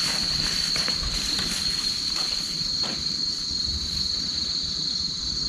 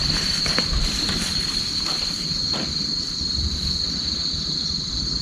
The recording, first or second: second